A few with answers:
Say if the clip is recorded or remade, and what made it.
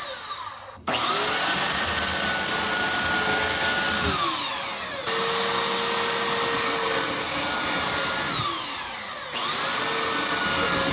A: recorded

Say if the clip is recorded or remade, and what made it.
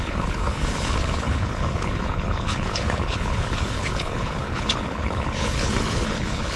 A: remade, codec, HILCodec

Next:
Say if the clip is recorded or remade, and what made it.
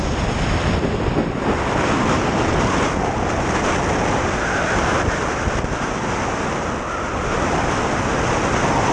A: recorded